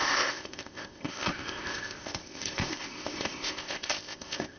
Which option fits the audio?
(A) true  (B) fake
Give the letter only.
B